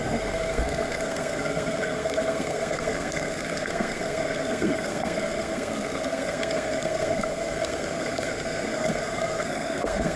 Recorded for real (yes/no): no